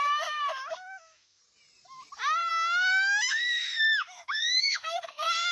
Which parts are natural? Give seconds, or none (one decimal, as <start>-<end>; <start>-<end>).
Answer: 1.4-2.5